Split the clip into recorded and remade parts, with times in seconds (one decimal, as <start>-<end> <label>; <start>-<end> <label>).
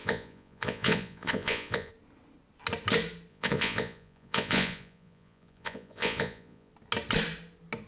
0.0-1.9 remade; 1.9-3.3 recorded; 3.3-6.7 remade; 6.7-7.9 recorded